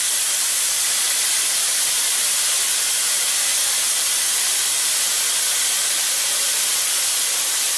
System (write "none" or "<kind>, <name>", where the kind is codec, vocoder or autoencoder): none